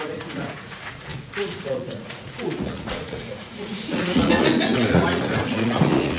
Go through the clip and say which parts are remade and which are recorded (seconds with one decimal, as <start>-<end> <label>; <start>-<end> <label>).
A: 0.0-6.2 remade